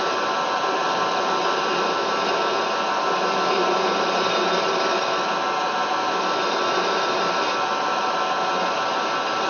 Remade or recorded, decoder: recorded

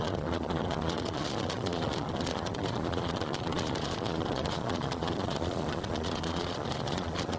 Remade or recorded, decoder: remade, vocoder, Vocos